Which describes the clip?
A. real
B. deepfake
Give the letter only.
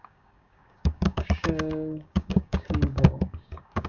B